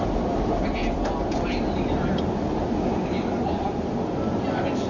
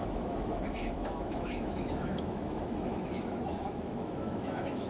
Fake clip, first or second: second